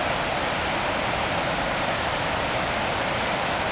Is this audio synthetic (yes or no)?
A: no